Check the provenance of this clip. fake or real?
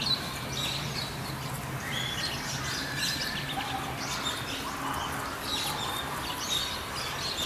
real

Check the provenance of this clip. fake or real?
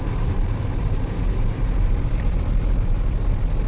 fake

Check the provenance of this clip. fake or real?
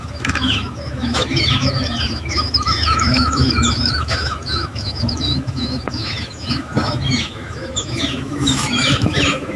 fake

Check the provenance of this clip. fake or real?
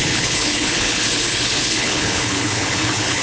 fake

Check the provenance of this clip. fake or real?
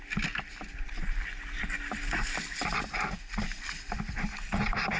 real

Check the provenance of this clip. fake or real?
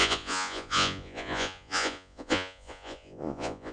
fake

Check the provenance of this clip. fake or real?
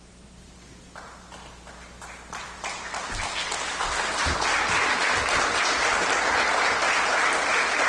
real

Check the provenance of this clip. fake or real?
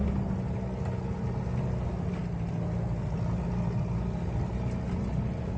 real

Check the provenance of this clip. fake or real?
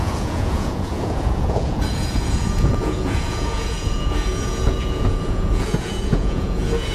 fake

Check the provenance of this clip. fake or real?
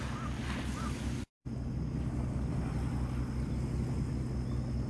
real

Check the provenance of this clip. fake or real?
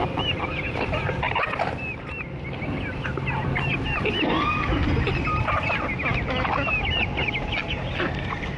real